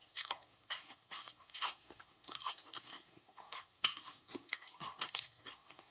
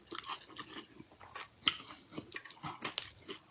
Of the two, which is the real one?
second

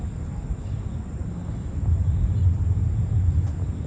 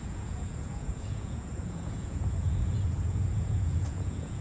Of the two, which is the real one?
first